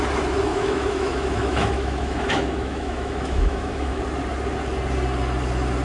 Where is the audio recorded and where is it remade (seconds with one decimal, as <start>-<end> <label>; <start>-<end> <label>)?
0.0-0.5 recorded; 0.5-4.0 remade; 4.0-5.8 recorded